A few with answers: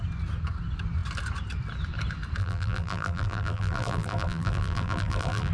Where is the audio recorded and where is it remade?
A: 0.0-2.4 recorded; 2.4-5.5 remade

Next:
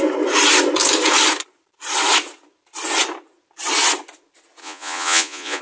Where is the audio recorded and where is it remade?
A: 0.0-4.6 recorded; 4.6-5.6 remade